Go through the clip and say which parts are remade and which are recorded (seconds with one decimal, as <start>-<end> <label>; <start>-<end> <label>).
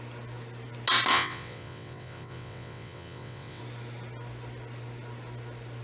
0.0-1.1 recorded; 1.1-3.6 remade; 3.6-5.8 recorded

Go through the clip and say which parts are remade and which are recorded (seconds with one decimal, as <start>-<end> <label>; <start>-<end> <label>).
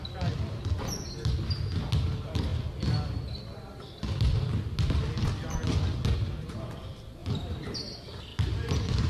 0.0-7.2 recorded; 7.2-7.8 remade; 7.8-8.3 recorded; 8.3-9.1 remade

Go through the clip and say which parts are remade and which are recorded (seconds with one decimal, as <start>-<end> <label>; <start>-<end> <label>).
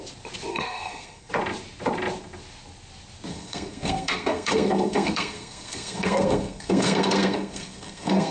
0.0-0.5 recorded; 0.5-1.3 remade; 1.3-3.3 recorded; 3.3-8.3 remade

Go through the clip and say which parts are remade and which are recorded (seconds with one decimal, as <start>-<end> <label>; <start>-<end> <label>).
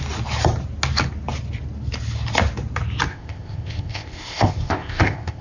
0.0-3.1 recorded; 3.1-5.4 remade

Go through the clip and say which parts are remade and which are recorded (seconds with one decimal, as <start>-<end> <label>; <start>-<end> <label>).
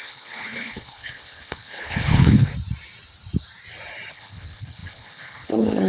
0.0-2.5 remade; 2.5-4.1 recorded; 4.1-5.9 remade